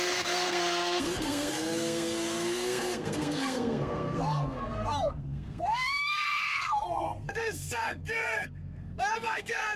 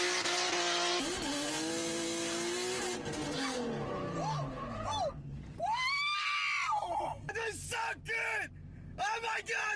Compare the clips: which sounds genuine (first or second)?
second